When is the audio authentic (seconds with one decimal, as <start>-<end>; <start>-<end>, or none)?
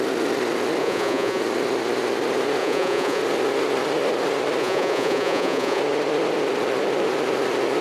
0.0-0.8; 1.4-2.6; 3.2-4.6; 5.8-7.8